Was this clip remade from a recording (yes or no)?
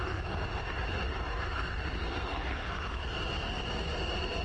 no